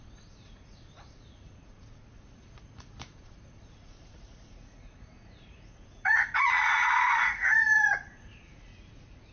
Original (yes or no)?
no